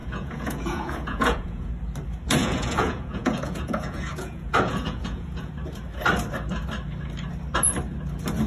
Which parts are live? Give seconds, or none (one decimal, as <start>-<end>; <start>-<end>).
1.7-2.4; 5.5-8.5